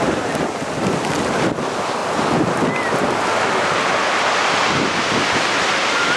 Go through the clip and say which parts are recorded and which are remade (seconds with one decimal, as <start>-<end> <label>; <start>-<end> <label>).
0.0-6.2 recorded